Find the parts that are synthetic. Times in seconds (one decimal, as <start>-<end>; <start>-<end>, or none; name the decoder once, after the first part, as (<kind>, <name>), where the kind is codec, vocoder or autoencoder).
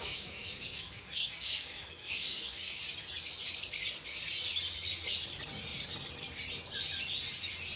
0.0-2.8 (codec, SNAC)